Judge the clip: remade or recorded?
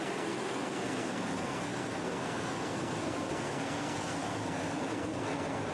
remade